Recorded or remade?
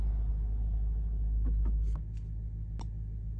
recorded